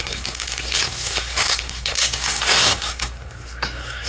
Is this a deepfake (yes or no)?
yes